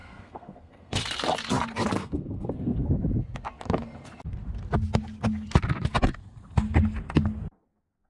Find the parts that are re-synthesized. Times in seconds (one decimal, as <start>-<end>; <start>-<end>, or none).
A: 0.0-0.9; 2.0-2.9